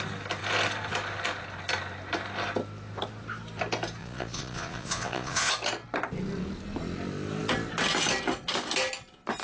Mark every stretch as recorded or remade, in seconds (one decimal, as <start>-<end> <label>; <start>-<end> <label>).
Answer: 0.0-4.0 recorded; 4.0-5.5 remade; 5.5-9.4 recorded